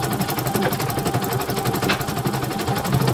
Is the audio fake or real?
real